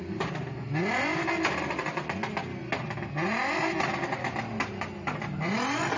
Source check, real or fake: real